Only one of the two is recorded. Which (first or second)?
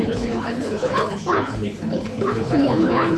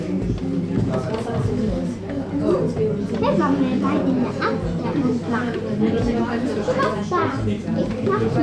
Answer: second